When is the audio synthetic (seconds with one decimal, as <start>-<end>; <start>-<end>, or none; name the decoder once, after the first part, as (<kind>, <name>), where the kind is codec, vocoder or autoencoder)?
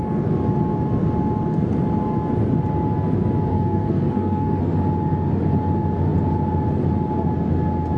3.5-4.6 (codec, SNAC)